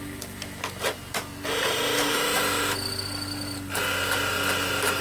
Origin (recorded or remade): recorded